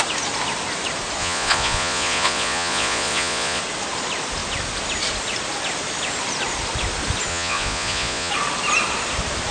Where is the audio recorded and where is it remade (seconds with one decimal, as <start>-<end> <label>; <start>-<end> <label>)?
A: 0.0-1.2 recorded; 1.2-3.6 remade; 3.6-7.3 recorded; 7.3-8.3 remade; 8.3-9.5 recorded